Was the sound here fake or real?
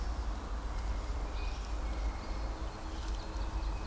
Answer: real